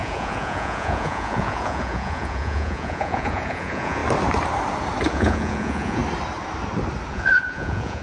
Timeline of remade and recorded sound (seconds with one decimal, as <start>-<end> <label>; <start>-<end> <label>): 0.0-4.0 remade; 4.0-5.1 recorded; 5.1-6.0 remade; 6.0-7.1 recorded; 7.1-8.0 remade